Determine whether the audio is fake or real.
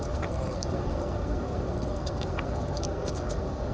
fake